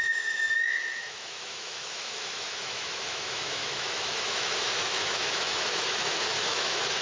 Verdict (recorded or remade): remade